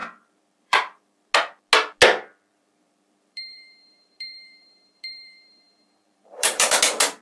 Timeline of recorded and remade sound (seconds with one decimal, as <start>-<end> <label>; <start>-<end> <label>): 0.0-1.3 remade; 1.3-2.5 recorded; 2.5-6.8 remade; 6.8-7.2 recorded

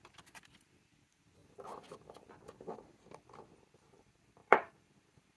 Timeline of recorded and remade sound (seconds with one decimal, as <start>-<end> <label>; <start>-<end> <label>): 0.0-4.4 recorded; 4.4-5.4 remade

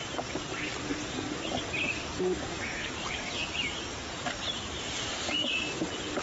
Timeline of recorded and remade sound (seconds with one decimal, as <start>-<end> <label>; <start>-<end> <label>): 0.0-2.7 recorded; 2.7-5.7 remade; 5.7-6.2 recorded

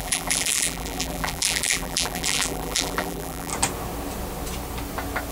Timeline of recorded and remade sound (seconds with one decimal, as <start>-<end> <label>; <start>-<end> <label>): 0.0-3.5 remade; 3.5-5.3 recorded